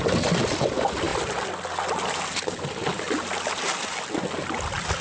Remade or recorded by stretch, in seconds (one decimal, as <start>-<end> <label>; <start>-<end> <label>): 0.0-5.0 recorded